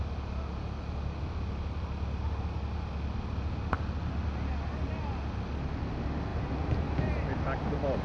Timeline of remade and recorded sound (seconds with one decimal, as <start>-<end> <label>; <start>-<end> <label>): 0.0-8.0 recorded